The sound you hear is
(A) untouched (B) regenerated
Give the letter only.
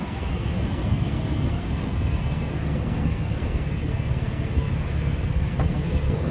B